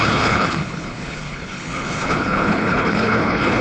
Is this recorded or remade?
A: remade